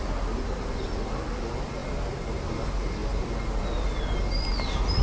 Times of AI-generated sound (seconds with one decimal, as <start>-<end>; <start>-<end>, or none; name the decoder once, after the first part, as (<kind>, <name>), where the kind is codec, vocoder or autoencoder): none